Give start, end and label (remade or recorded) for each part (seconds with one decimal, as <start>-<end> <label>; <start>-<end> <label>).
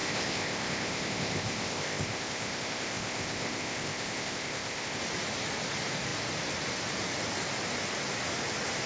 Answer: 0.0-5.0 remade; 5.0-8.9 recorded